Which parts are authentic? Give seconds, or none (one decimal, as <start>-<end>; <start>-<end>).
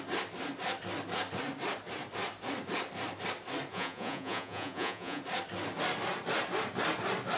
0.0-3.7; 5.2-7.4